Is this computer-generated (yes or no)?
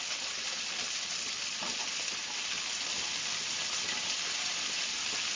no